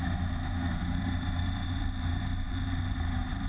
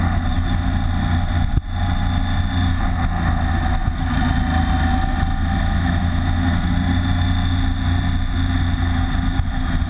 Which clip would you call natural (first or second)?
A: second